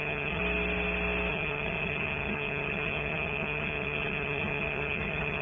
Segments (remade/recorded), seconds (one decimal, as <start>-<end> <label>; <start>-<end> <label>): 0.0-0.4 remade; 0.4-1.3 recorded; 1.3-5.4 remade